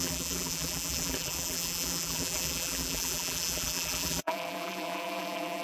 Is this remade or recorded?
remade